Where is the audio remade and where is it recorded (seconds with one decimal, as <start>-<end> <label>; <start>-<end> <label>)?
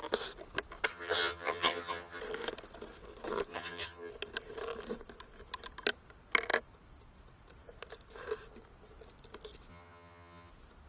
0.0-0.9 recorded; 0.9-2.2 remade; 2.2-3.5 recorded; 3.5-4.1 remade; 4.1-9.7 recorded; 9.7-10.5 remade; 10.5-10.9 recorded